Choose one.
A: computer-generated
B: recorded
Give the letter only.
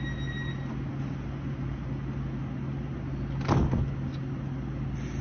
B